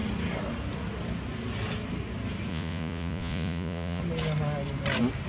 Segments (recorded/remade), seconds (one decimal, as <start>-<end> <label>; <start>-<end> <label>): 0.0-2.5 recorded; 2.5-4.0 remade; 4.0-5.3 recorded